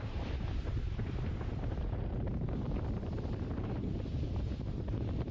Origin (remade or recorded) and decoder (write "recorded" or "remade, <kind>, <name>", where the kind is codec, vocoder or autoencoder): remade, vocoder, BigVGAN v2